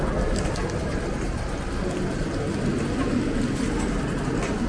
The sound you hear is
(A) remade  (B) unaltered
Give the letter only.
B